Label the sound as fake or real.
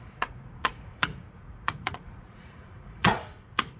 fake